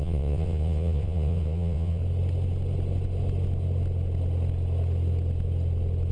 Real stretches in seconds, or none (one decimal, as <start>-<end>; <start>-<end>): 2.0-6.1